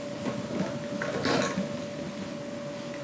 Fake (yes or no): no